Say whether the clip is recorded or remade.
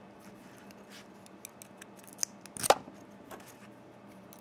recorded